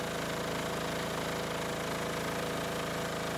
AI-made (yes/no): no